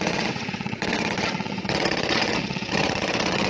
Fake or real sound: fake